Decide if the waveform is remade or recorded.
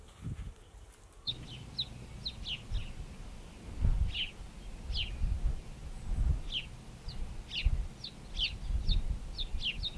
recorded